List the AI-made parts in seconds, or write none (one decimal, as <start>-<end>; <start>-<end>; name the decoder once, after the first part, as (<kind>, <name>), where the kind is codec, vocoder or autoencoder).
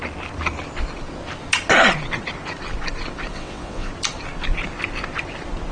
3.3-3.9 (vocoder, WaveNeXt)